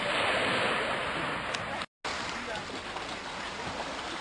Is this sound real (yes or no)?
yes